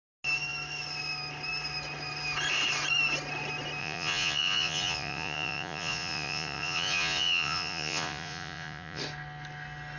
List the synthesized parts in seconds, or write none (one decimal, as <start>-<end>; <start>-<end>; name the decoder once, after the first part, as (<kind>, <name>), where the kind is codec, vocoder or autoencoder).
3.8-9.0 (vocoder, Vocos)

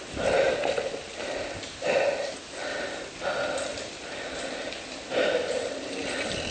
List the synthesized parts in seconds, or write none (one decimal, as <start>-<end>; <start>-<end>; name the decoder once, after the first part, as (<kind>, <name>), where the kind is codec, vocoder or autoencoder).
3.7-6.5 (vocoder, BigVGAN v2)